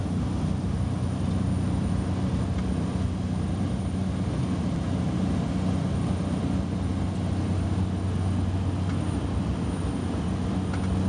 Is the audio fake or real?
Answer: real